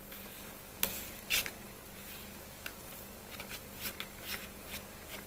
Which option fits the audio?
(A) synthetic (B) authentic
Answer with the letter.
A